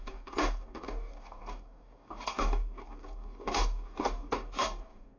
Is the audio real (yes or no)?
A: no